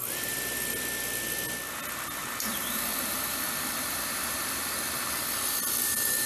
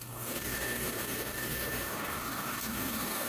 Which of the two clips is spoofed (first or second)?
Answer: second